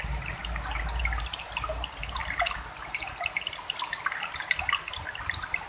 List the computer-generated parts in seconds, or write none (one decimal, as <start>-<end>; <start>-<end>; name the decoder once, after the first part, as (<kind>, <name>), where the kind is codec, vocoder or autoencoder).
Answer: 0.0-0.4 (vocoder, BigVGAN v2); 1.0-2.2